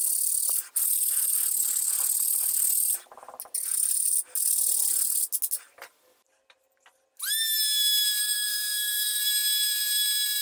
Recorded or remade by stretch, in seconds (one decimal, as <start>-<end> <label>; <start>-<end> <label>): 0.0-8.2 recorded; 8.2-9.2 remade; 9.2-10.4 recorded